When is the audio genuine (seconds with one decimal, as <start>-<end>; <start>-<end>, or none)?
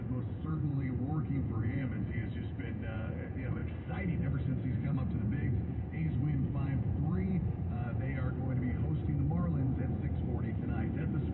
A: 3.6-5.1; 8.1-9.5; 10.1-11.3